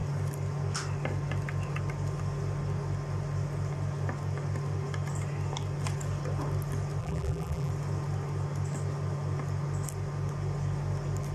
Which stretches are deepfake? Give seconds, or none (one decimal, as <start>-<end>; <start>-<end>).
7.0-7.7